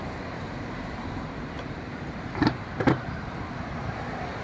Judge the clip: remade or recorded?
remade